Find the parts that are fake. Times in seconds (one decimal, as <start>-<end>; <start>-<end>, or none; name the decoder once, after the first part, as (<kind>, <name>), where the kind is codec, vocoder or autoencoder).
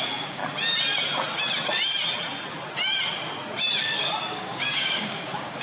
0.0-0.4 (codec, DAC); 3.8-5.6